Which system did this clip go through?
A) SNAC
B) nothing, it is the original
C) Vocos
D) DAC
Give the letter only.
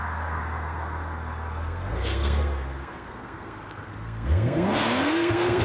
A